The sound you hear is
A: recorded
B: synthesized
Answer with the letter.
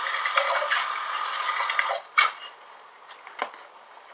A